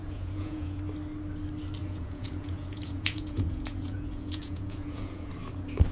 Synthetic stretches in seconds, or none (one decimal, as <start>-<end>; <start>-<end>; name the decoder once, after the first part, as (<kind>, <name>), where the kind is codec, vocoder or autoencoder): 0.0-0.8 (vocoder, Vocos); 1.8-5.3